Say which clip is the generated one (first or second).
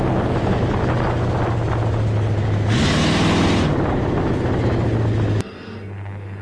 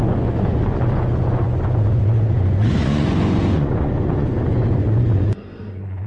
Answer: second